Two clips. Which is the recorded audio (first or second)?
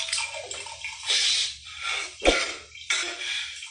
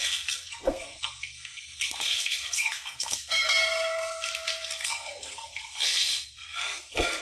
first